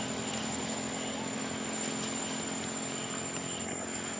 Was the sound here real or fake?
real